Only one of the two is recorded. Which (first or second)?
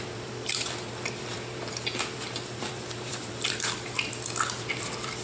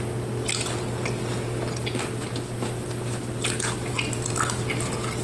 second